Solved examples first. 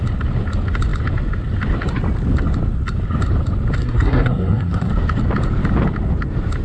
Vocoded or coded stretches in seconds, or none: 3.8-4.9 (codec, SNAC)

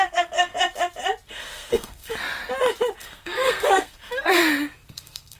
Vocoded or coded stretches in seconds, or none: 0.0-0.5 (codec, SNAC); 1.3-2.1; 3.0-4.4; 4.9-5.4

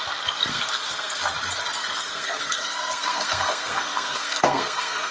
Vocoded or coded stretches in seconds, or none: 0.5-1.2 (codec, SNAC); 1.8-5.1

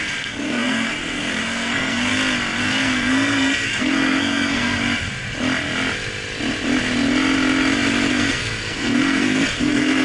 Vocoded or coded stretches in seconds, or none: 0.0-2.1 (codec, SNAC); 2.6-4.8; 8.1-10.0